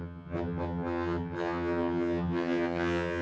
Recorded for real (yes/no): no